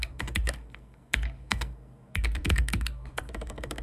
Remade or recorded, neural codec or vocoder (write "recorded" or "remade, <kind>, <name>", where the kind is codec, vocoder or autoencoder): remade, codec, SNAC